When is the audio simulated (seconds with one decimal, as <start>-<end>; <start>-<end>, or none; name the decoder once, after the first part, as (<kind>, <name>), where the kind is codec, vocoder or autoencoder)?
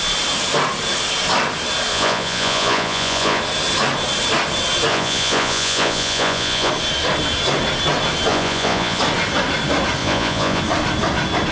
1.9-3.4 (vocoder, Vocos); 4.9-6.7; 8.3-9.0; 10.0-10.6